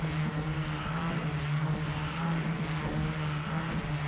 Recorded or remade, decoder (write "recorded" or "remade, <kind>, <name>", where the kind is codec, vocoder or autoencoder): recorded